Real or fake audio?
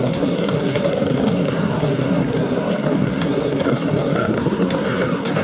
fake